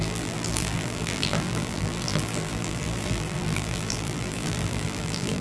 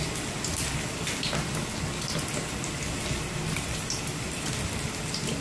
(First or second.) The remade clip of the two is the first